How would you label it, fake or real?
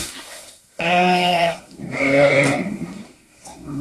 fake